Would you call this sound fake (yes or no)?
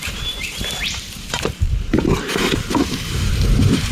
yes